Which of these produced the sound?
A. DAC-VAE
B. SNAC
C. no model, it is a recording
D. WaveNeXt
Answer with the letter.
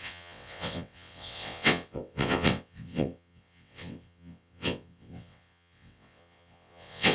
D